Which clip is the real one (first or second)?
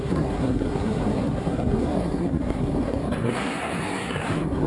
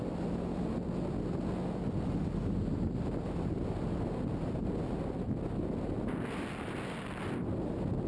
second